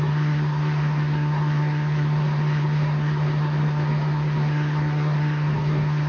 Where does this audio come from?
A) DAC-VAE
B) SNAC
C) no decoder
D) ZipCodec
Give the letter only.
B